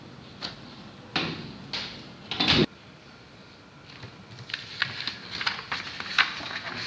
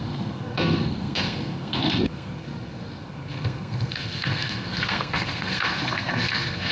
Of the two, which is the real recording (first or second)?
first